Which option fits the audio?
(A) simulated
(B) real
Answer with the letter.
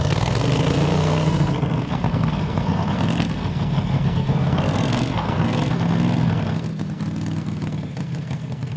A